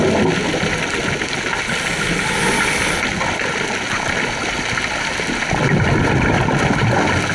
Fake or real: real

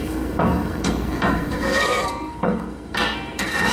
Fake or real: fake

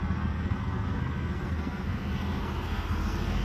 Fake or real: fake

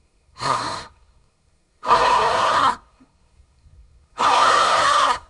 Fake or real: fake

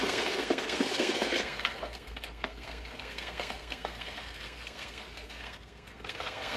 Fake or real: fake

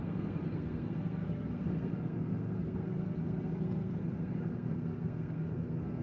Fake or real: fake